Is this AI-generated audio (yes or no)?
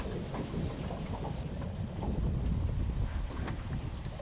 no